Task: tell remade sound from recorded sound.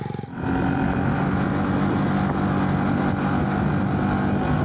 recorded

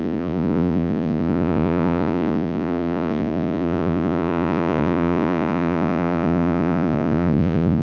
remade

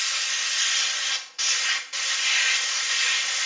recorded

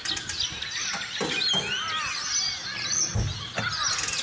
recorded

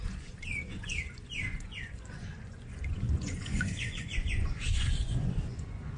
remade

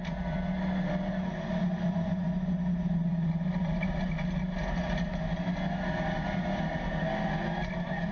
recorded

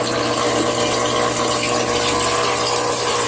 recorded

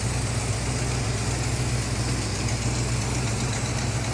recorded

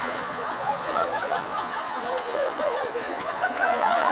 remade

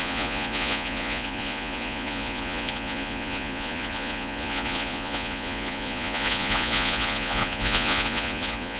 remade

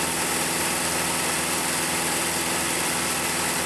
recorded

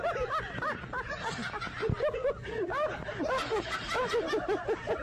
recorded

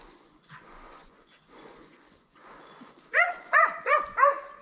remade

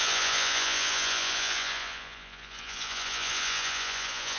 remade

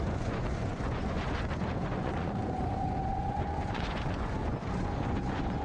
remade